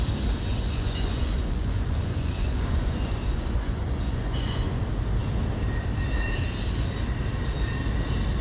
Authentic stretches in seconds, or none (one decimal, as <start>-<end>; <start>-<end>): 0.0-0.5; 4.8-8.4